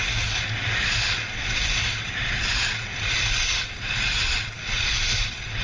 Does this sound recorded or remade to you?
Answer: recorded